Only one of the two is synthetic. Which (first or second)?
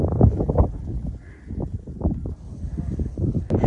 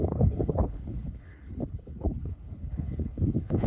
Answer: second